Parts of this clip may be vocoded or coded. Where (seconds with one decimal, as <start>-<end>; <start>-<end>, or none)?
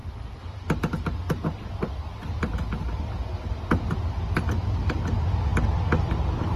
none